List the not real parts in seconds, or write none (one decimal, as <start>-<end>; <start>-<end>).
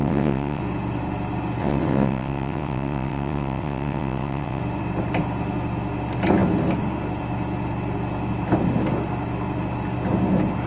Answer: 0.0-0.6; 1.6-4.6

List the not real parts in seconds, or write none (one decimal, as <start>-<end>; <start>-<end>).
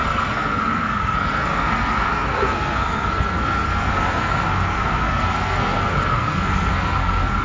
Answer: 0.0-7.4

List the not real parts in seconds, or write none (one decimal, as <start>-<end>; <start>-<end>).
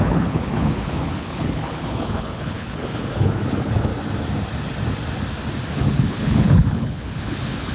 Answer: 0.0-3.9; 5.7-7.7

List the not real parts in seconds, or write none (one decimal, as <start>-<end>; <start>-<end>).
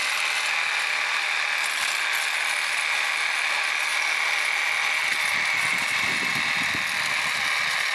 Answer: none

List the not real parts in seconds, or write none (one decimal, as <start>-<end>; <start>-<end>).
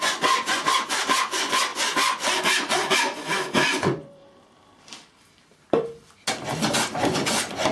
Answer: 0.0-4.2; 6.8-7.7